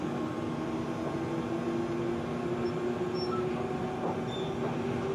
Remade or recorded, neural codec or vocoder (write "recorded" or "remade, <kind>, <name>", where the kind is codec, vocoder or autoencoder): recorded